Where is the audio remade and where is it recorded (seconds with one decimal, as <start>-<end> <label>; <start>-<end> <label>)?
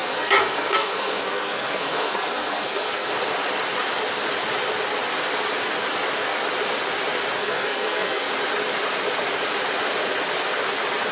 0.0-3.1 remade; 3.1-7.4 recorded; 7.4-8.3 remade; 8.3-11.1 recorded